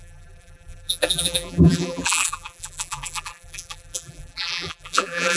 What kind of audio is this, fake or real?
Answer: fake